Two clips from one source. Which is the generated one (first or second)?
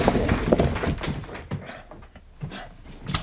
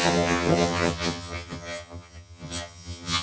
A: second